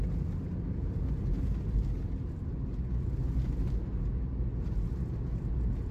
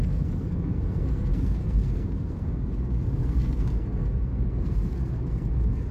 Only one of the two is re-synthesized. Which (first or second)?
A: second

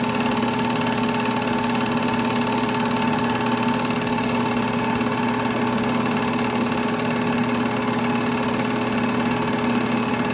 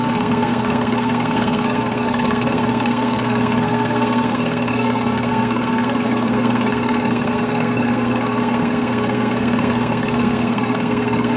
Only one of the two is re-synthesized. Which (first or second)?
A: second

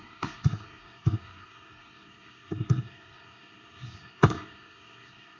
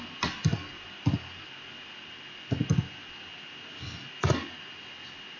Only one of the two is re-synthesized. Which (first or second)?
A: first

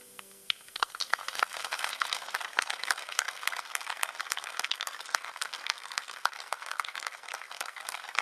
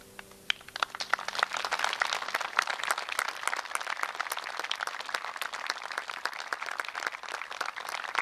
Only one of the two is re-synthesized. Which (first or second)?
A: first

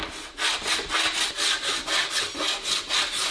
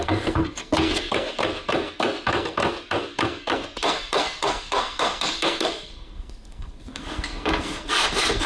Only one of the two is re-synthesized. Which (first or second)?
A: second